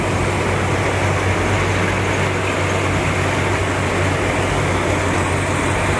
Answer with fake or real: real